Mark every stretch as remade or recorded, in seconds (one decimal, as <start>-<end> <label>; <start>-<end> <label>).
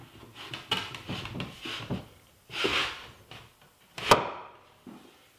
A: 0.0-2.0 recorded; 2.0-2.7 remade; 2.7-5.4 recorded